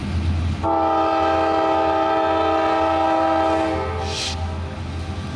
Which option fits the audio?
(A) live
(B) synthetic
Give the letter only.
A